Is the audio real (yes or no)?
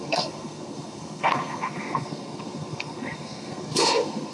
no